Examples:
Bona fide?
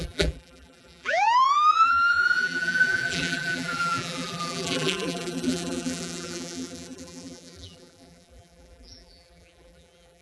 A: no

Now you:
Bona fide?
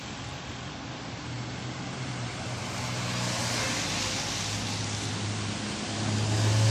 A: yes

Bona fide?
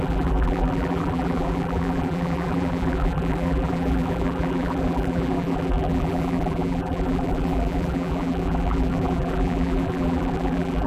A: no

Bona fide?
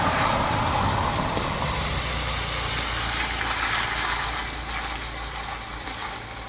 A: yes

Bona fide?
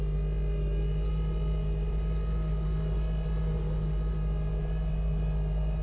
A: yes